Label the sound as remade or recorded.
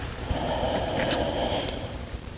remade